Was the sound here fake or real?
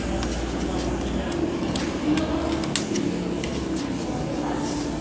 real